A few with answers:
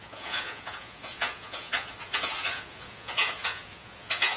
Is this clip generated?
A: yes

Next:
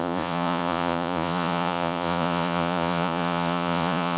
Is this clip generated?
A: yes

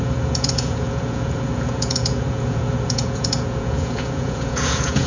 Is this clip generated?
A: yes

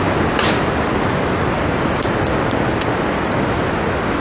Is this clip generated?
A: no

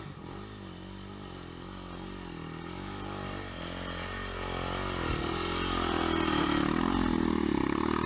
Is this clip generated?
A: no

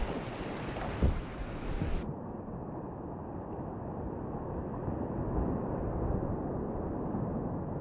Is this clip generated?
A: no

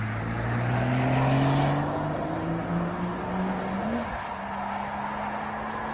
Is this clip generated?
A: no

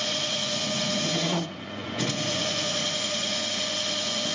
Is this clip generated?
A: yes